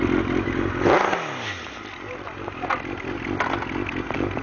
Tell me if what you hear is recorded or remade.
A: recorded